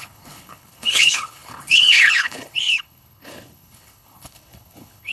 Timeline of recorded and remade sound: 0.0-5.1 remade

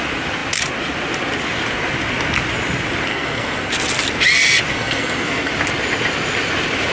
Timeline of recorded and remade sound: 0.0-3.1 recorded; 3.1-3.7 remade; 3.7-4.7 recorded; 4.7-5.5 remade; 5.5-6.9 recorded

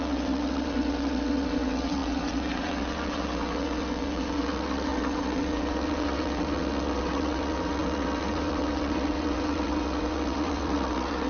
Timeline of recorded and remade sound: 0.0-11.3 remade

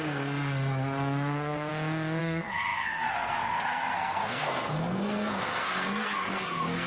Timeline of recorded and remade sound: 0.0-1.7 remade; 1.7-2.2 recorded; 2.2-6.9 remade

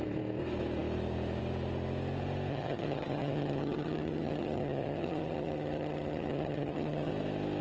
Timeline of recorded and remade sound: 0.0-2.5 recorded; 2.5-7.1 remade; 7.1-7.6 recorded

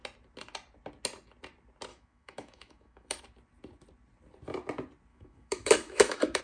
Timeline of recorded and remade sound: 0.0-1.9 recorded; 1.9-3.2 remade; 3.2-5.1 recorded; 5.1-6.4 remade

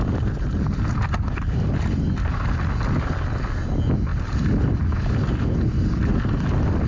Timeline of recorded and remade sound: 0.0-6.9 recorded